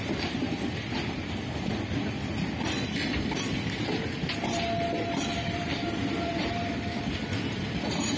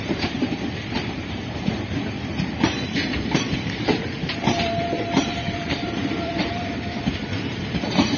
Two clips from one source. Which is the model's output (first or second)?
second